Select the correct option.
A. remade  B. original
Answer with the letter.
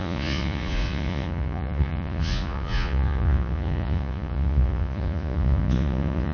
A